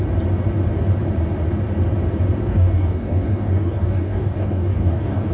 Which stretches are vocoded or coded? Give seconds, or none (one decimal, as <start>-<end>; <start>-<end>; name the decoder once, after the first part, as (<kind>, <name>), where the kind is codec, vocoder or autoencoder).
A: 2.4-5.3 (codec, DAC)